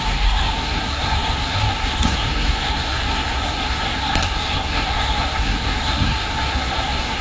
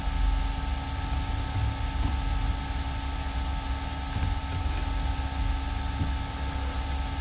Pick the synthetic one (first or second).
first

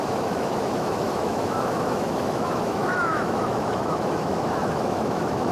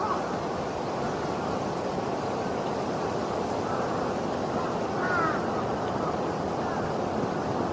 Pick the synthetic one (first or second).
first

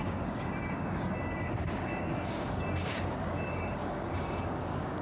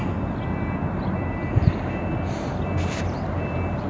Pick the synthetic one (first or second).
first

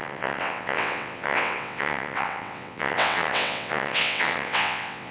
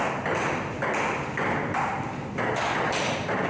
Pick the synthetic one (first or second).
first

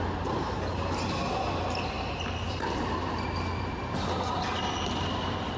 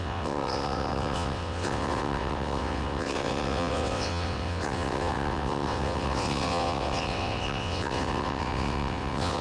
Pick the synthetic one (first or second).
second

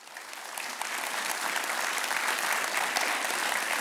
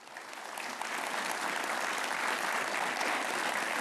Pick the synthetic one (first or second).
first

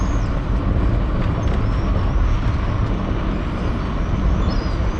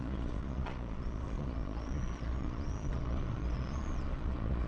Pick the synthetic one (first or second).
second